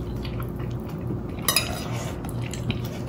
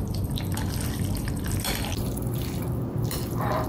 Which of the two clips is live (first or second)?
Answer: first